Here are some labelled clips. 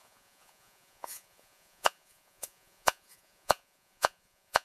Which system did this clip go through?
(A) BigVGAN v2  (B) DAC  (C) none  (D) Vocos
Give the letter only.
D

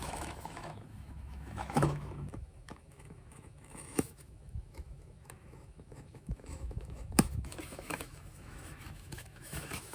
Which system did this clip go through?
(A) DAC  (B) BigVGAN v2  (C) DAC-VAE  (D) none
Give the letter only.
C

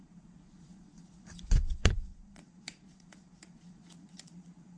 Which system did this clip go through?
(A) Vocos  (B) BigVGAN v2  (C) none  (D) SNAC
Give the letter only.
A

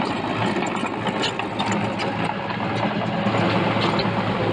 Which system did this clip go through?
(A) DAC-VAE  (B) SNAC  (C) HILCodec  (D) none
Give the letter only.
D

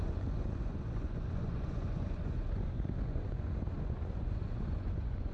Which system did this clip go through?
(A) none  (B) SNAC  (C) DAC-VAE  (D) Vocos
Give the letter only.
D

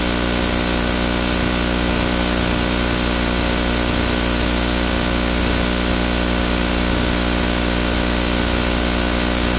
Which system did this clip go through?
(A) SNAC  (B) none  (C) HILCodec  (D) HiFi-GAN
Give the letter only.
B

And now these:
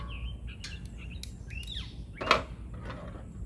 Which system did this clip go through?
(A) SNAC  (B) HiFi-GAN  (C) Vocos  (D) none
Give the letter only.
D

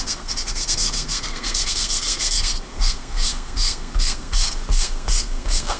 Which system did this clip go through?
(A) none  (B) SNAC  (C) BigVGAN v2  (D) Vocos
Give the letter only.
B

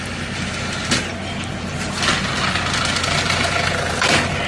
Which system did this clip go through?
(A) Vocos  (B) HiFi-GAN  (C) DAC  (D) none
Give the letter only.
D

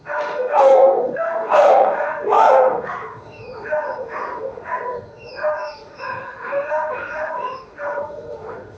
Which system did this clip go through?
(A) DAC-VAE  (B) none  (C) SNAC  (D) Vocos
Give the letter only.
A